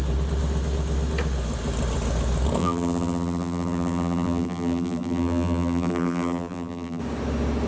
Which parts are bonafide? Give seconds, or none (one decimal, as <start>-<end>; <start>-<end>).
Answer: 0.0-2.6; 7.0-7.7